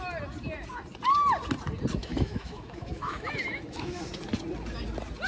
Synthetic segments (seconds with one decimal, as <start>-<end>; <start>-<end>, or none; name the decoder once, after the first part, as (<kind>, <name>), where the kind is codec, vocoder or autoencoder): 2.0-4.0 (autoencoder, DAC-VAE)